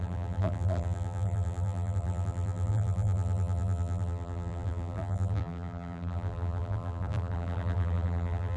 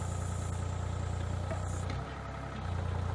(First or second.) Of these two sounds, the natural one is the second